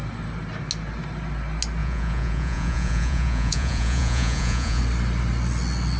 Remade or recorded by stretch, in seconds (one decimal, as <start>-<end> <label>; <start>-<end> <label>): 0.0-1.8 recorded; 1.8-4.8 remade; 4.8-6.0 recorded